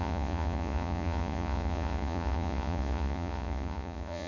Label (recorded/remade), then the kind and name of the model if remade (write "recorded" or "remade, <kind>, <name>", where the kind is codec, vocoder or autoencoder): remade, vocoder, Vocos